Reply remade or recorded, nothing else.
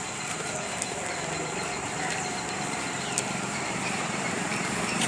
remade